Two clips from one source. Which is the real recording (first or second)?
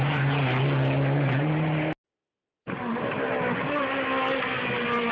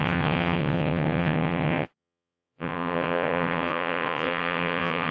first